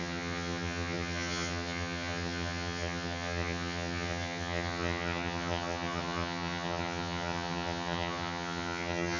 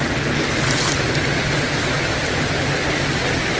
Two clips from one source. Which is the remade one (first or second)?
first